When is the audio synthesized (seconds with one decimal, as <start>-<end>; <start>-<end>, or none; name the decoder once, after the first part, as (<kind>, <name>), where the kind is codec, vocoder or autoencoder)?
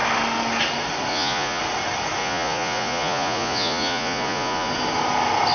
1.1-1.6 (vocoder, Vocos); 2.2-4.7